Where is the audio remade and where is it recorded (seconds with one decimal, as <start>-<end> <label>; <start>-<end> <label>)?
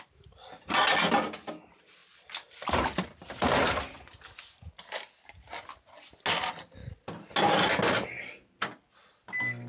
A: 0.0-9.7 recorded